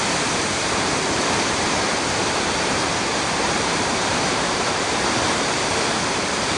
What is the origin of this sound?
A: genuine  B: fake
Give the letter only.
B